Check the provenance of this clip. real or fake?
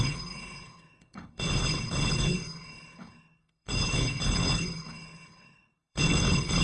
fake